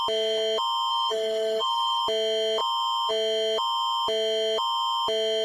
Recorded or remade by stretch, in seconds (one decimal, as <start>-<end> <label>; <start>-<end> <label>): 0.0-0.9 recorded; 0.9-2.0 remade; 2.0-5.4 recorded